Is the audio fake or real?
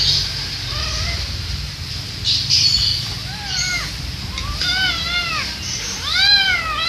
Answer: real